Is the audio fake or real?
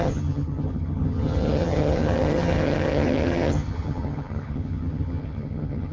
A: fake